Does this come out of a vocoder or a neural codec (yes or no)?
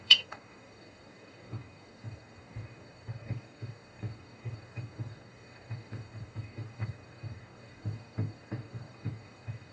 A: yes